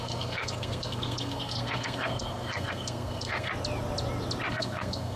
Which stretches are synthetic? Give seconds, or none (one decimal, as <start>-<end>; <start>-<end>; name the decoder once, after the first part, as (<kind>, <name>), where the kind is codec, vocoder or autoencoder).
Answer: 0.0-3.5 (codec, SNAC); 4.5-5.2